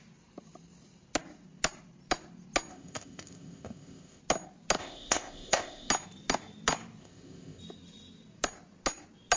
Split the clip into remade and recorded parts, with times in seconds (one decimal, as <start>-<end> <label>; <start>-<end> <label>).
0.0-2.7 recorded; 2.7-4.2 remade; 4.2-4.8 recorded; 4.8-5.9 remade; 5.9-7.0 recorded; 7.0-7.6 remade; 7.6-9.4 recorded